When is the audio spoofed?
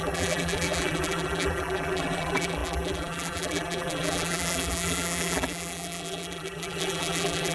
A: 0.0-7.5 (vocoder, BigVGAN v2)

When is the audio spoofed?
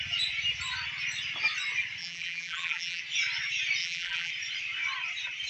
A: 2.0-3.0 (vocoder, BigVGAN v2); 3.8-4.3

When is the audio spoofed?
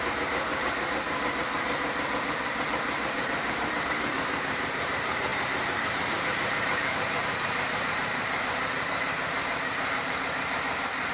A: 0.0-11.1 (vocoder, BigVGAN v2)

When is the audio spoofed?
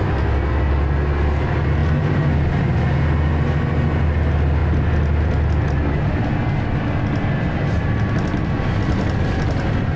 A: none